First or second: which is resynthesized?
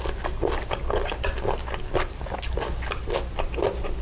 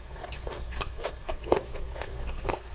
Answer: second